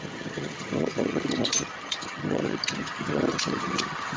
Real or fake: fake